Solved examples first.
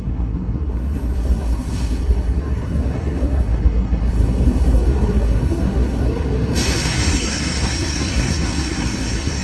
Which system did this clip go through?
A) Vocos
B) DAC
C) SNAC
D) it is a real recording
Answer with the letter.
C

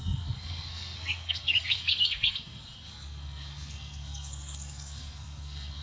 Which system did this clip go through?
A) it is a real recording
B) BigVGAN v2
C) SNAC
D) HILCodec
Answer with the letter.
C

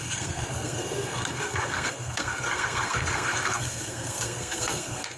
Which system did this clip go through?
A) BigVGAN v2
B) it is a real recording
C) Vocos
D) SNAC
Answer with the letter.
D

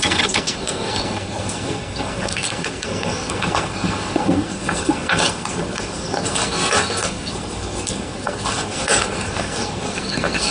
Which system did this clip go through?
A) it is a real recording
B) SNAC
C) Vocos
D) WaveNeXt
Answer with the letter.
B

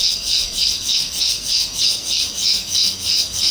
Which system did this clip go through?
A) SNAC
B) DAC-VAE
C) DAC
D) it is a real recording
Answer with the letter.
A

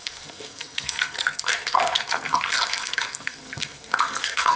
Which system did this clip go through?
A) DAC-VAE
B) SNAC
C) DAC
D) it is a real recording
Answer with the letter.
B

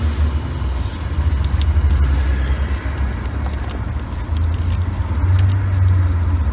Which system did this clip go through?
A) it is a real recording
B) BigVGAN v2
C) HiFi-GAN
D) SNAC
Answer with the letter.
A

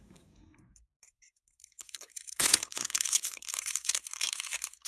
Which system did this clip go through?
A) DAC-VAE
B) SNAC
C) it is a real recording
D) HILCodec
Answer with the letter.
B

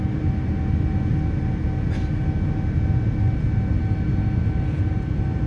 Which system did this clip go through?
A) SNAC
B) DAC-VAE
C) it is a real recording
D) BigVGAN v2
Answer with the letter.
C